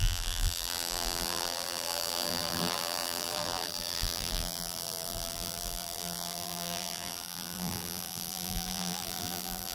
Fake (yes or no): yes